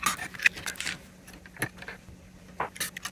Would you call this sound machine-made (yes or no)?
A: no